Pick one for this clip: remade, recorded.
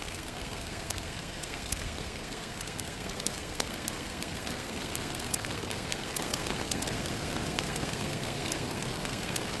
remade